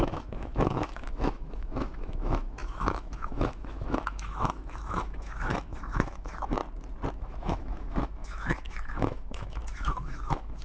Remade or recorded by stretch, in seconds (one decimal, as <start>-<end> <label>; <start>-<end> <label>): 0.0-6.6 remade; 6.6-7.1 recorded; 7.1-10.6 remade